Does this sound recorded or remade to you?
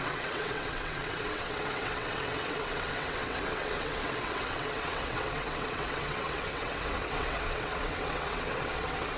remade